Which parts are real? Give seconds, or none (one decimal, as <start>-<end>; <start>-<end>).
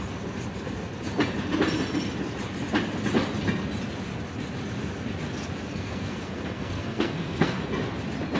0.0-5.7; 7.6-8.4